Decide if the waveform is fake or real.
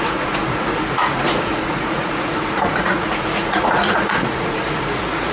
fake